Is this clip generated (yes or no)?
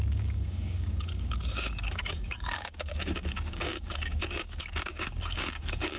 yes